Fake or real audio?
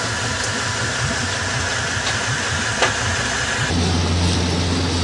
real